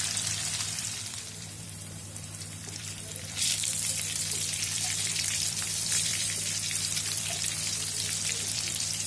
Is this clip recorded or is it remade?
remade